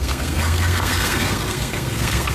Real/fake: fake